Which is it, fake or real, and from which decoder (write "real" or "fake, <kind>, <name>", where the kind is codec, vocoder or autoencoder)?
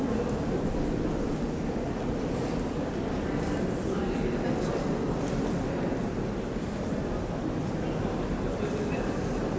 real